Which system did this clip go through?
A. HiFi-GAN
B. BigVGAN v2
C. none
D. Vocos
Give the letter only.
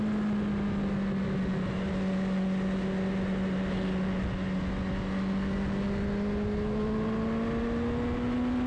C